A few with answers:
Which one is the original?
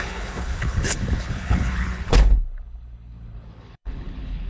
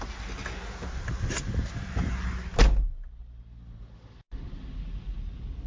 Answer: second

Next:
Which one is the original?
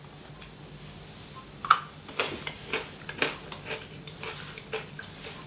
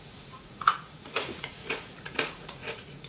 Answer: first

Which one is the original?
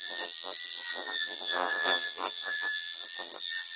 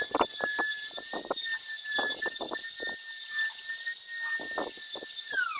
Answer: second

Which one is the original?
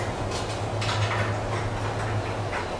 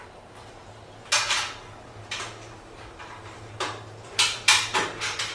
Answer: first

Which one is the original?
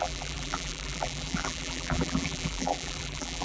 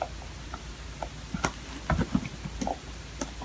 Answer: second